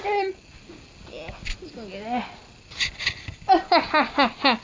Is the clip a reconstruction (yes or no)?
no